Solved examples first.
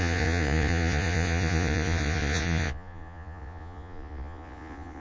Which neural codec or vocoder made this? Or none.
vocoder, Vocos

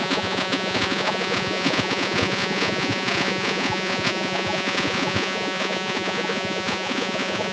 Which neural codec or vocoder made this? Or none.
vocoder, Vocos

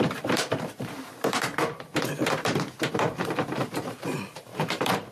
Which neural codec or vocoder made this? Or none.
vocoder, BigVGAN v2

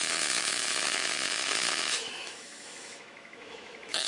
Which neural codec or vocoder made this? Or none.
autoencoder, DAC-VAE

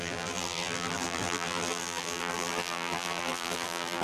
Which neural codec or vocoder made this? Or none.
vocoder, BigVGAN v2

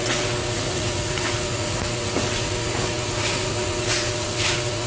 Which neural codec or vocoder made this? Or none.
vocoder, Vocos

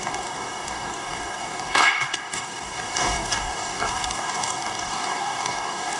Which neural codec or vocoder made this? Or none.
codec, DAC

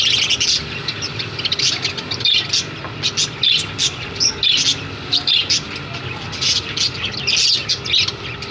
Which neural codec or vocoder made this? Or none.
none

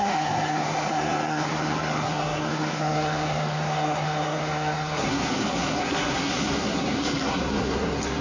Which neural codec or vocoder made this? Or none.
codec, SNAC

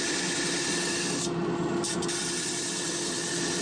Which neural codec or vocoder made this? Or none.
none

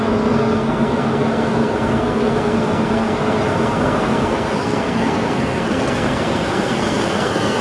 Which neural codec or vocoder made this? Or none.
codec, SNAC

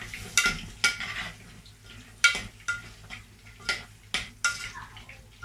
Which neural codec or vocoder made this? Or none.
none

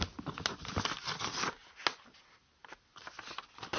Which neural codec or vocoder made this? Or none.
none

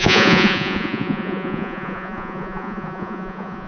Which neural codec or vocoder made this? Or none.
vocoder, Vocos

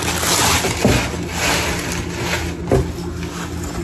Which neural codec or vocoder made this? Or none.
none